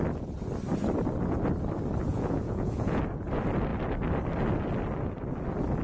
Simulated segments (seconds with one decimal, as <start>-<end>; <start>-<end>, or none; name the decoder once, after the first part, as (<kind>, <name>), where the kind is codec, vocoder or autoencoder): 2.1-3.0 (vocoder, Vocos)